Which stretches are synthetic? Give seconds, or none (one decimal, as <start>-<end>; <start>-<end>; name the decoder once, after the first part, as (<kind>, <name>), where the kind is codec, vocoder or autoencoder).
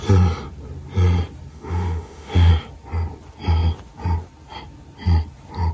1.5-2.5 (autoencoder, DAC-VAE)